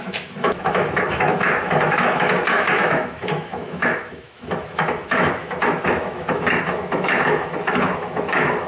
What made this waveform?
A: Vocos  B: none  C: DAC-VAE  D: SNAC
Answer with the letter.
C